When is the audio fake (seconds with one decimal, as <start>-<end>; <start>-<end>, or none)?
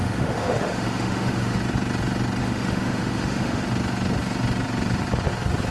0.0-1.6; 2.4-3.6